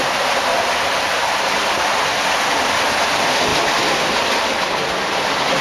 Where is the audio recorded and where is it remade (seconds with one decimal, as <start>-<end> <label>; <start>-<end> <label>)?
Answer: 0.0-5.6 recorded